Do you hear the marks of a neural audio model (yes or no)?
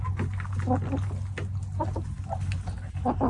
no